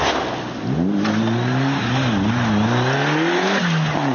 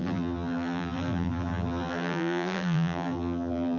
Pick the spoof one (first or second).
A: second